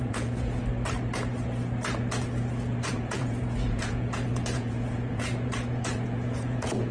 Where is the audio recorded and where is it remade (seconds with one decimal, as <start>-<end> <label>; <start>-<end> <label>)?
0.0-0.6 remade; 0.6-2.9 recorded; 2.9-6.9 remade